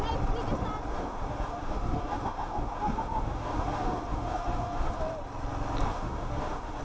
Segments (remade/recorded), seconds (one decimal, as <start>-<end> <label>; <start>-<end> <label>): 0.0-0.9 recorded; 0.9-5.0 remade; 5.0-5.9 recorded; 5.9-6.8 remade